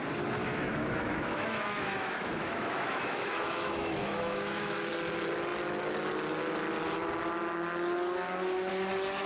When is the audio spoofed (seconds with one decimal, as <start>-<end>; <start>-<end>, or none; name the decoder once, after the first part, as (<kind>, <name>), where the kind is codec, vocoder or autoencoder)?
0.4-4.9 (autoencoder, DAC-VAE)